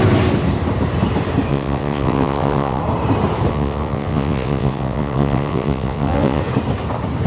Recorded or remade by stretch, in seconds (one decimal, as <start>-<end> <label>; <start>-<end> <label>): 0.0-1.5 recorded; 1.5-2.8 remade; 2.8-3.5 recorded; 3.5-6.4 remade; 6.4-7.3 recorded